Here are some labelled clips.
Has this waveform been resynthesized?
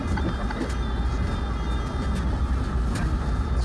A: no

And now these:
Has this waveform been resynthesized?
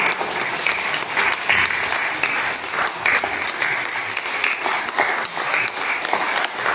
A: no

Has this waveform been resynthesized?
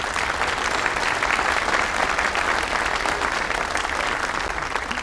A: no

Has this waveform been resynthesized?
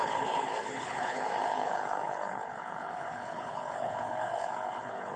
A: yes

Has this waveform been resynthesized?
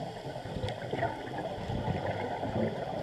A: no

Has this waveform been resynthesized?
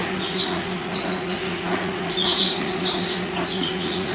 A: yes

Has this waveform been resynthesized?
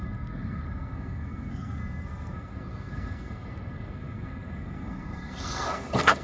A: yes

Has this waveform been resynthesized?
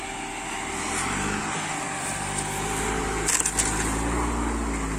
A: no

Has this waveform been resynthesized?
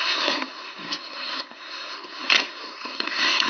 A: yes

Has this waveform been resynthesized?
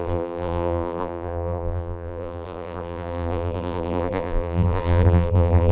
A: yes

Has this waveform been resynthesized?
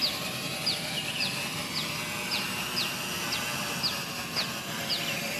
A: no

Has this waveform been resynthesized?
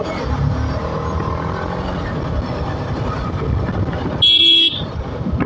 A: no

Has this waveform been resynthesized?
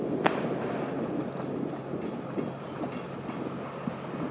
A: no